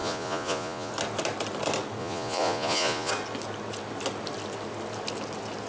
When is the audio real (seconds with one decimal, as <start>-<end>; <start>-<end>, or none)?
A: 0.9-2.0; 3.1-5.7